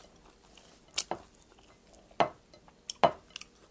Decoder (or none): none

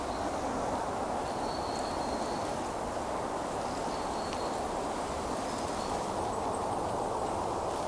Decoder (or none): none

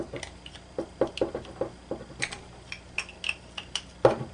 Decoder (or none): none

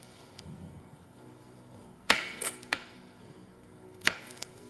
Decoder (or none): codec, SNAC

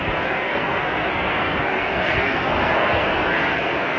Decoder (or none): codec, SNAC